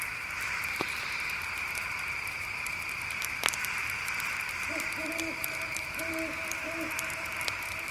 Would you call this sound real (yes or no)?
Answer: no